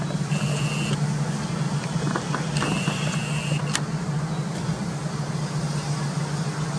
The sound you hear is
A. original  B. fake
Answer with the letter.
A